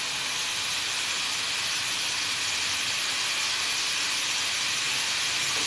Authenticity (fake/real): real